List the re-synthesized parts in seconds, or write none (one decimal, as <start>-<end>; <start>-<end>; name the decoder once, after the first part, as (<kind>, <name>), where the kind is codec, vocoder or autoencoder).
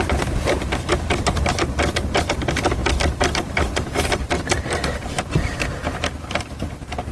0.0-7.1 (vocoder, BigVGAN v2)